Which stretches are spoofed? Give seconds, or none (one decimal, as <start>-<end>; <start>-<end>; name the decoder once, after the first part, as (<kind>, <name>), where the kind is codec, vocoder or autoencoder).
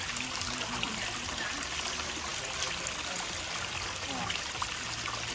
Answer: none